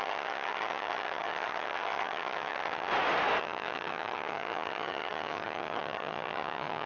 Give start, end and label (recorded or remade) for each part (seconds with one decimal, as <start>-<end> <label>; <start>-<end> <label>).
0.0-2.9 remade; 2.9-3.4 recorded; 3.4-6.9 remade